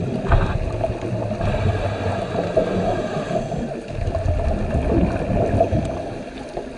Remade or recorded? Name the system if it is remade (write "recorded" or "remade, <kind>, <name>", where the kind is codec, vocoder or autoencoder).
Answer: recorded